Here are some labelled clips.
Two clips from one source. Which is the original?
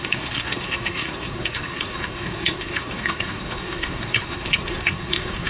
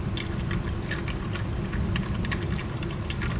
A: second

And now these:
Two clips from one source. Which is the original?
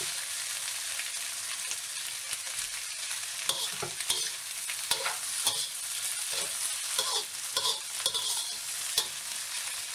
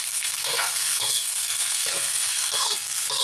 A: first